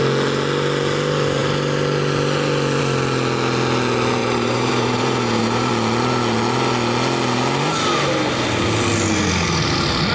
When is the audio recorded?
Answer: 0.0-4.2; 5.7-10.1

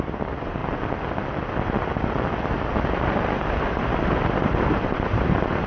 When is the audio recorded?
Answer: 0.6-3.6

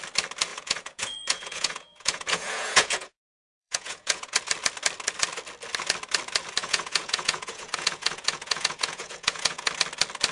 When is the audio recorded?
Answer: 0.0-0.5; 3.2-3.6; 4.4-6.6; 9.7-10.3

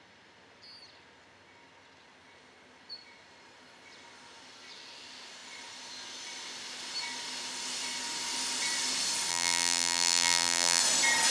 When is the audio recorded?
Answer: 0.0-9.3; 10.8-11.3

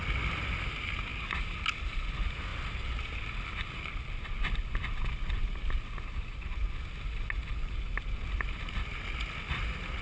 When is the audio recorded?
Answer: 0.0-10.0